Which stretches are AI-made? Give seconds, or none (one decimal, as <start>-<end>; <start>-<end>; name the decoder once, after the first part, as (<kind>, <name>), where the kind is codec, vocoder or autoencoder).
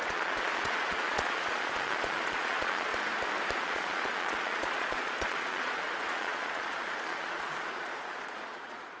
0.0-2.9 (vocoder, Vocos); 3.6-9.0